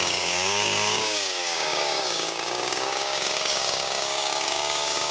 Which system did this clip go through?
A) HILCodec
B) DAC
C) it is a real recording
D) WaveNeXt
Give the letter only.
B